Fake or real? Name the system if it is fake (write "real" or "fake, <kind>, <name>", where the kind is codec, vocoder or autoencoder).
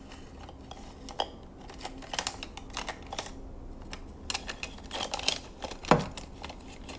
real